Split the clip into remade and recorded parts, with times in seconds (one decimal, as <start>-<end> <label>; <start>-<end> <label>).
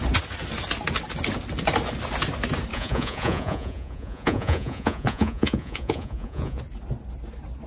0.0-2.7 recorded; 2.7-6.6 remade; 6.6-7.7 recorded